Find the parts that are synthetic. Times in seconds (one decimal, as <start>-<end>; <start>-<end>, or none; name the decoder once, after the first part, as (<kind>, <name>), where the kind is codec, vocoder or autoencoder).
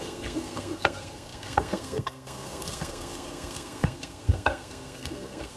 0.0-5.6 (codec, SNAC)